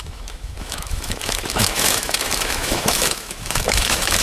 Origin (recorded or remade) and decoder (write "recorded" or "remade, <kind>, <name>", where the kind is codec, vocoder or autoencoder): remade, autoencoder, DAC-VAE